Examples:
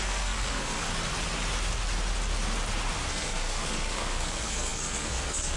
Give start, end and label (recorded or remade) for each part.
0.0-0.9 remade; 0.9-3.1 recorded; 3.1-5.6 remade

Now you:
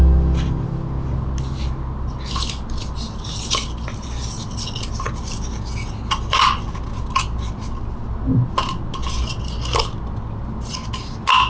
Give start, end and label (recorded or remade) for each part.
0.0-11.5 recorded

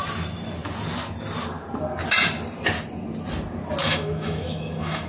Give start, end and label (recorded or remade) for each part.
0.0-3.8 recorded; 3.8-5.1 remade

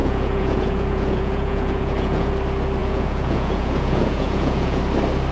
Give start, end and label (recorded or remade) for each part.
0.0-2.3 remade; 2.3-2.8 recorded; 2.8-4.8 remade; 4.8-5.3 recorded

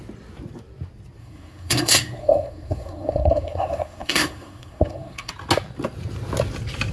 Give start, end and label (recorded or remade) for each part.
0.0-1.2 recorded; 1.2-5.3 remade; 5.3-6.9 recorded

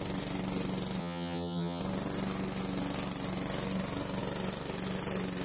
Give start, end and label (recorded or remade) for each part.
0.0-1.0 recorded; 1.0-1.8 remade; 1.8-5.4 recorded

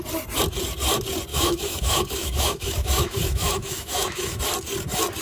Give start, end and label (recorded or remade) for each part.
0.0-1.3 recorded; 1.3-4.4 remade; 4.4-5.2 recorded

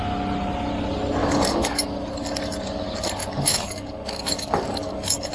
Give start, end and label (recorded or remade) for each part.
0.0-1.2 recorded; 1.2-1.8 remade; 1.8-3.2 recorded; 3.2-5.3 remade